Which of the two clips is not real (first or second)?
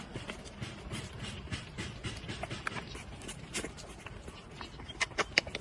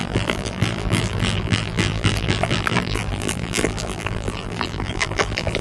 second